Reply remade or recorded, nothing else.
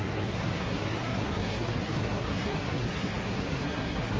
remade